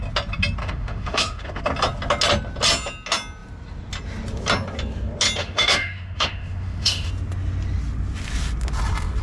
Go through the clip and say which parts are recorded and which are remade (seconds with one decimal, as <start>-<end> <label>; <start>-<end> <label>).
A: 0.0-0.6 recorded; 0.6-1.6 remade; 1.6-5.4 recorded; 5.4-7.1 remade; 7.1-9.2 recorded